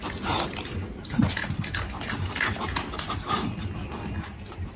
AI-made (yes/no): no